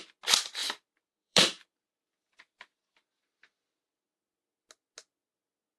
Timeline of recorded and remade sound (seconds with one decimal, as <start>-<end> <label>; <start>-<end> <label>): 0.0-0.6 recorded; 0.6-4.1 remade; 4.1-5.8 recorded

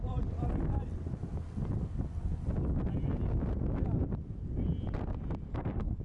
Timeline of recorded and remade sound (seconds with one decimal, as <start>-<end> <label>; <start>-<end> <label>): 0.0-5.5 recorded; 5.5-6.0 remade

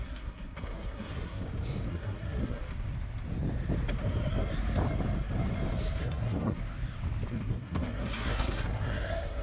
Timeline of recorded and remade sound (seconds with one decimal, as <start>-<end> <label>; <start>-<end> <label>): 0.0-1.4 remade; 1.4-1.9 recorded; 1.9-2.6 remade; 2.6-6.0 recorded; 6.0-6.6 remade; 6.6-7.3 recorded; 7.3-9.4 remade

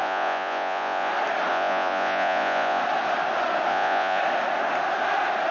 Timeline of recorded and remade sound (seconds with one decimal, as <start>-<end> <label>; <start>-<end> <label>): 0.0-1.1 remade; 1.1-1.5 recorded; 1.5-2.8 remade; 2.8-3.7 recorded; 3.7-4.2 remade; 4.2-5.5 recorded

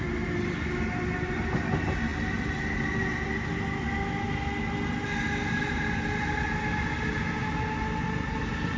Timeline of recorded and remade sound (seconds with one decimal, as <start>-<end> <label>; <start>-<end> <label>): 0.0-8.8 recorded

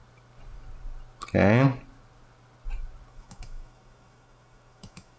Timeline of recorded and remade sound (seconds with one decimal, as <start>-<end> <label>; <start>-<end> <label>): 0.0-3.1 recorded; 3.1-5.2 remade